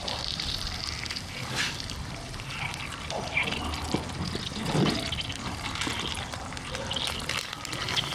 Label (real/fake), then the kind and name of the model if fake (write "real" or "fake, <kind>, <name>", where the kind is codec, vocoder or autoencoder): fake, vocoder, BigVGAN v2